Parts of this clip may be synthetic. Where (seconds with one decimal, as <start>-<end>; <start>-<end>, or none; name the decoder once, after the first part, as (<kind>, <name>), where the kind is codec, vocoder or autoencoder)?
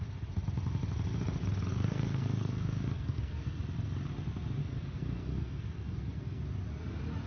1.7-3.6 (codec, SNAC); 4.6-6.4